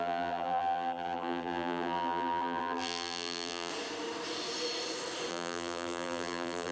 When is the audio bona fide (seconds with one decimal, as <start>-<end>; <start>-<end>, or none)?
3.7-5.3